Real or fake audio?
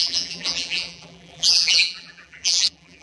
fake